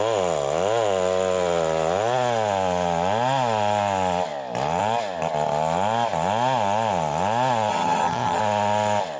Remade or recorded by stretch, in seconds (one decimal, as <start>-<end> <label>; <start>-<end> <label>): 0.0-7.7 recorded; 7.7-8.4 remade; 8.4-9.2 recorded